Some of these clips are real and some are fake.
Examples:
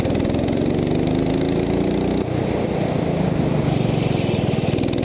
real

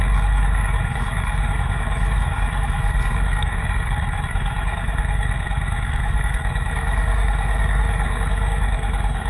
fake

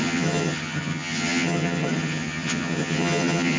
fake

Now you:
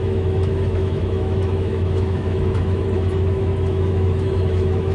fake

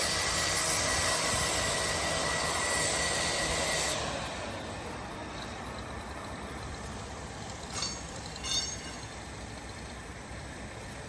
fake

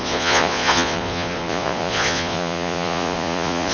fake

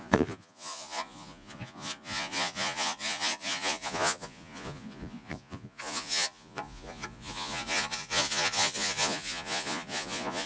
fake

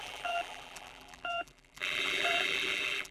fake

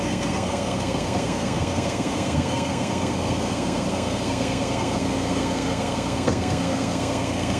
fake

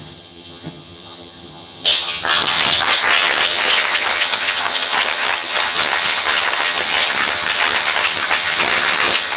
fake